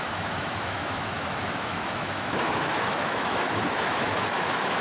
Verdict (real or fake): fake